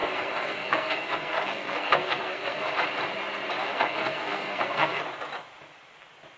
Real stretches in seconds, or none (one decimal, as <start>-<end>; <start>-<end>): 2.7-3.6; 5.0-6.4